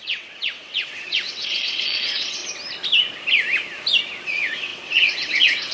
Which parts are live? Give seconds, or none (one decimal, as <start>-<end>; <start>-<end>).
2.4-4.2